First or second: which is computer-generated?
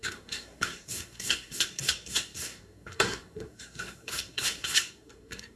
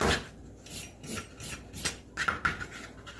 first